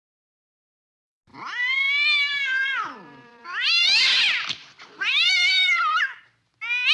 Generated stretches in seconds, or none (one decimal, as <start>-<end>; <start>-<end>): 1.3-4.0; 4.6-6.0